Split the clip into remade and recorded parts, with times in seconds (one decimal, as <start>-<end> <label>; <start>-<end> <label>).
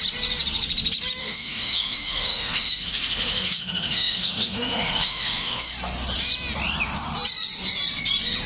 0.0-1.2 recorded; 1.2-5.7 remade; 5.7-8.5 recorded